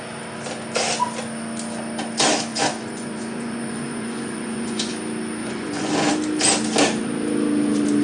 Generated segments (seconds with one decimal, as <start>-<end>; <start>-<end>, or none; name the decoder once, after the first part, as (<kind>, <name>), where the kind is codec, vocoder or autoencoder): 2.5-4.9 (vocoder, Vocos); 5.4-5.9